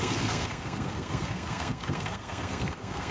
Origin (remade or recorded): remade